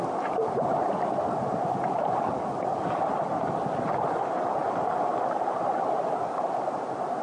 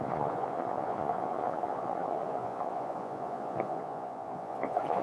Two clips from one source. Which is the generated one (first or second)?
second